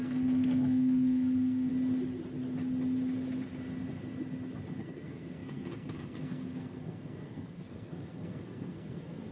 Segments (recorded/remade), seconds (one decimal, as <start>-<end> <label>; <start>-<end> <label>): 0.0-1.7 remade; 1.7-4.8 recorded; 4.8-9.3 remade